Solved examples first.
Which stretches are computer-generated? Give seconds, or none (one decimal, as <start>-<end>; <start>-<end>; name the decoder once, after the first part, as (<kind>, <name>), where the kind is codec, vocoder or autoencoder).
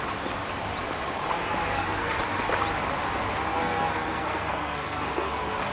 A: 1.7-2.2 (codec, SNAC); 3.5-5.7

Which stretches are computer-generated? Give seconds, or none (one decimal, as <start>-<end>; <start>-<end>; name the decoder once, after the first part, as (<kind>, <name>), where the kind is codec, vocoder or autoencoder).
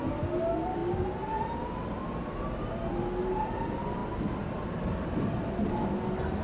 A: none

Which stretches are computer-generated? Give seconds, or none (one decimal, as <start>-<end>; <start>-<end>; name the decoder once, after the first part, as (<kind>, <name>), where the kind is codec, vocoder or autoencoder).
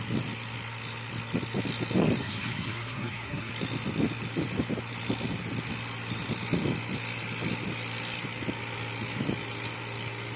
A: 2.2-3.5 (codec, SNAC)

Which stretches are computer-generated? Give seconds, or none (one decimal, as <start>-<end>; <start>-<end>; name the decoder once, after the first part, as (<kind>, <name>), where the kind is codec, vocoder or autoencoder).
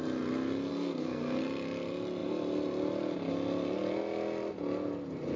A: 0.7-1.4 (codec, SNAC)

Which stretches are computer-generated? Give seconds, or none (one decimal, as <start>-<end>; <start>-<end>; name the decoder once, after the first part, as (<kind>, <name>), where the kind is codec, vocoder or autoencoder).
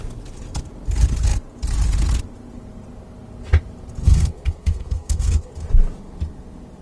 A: 4.0-5.5 (codec, SNAC)